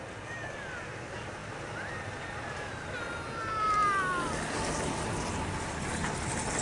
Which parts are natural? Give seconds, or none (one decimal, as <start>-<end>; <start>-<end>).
0.0-6.6